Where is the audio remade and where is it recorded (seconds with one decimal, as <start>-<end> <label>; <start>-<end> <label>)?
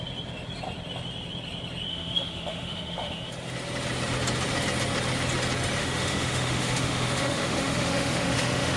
0.0-1.9 recorded; 1.9-3.3 remade; 3.3-5.8 recorded; 5.8-8.8 remade